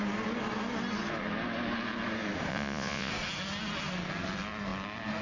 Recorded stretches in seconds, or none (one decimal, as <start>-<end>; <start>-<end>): 0.0-2.5; 3.1-5.2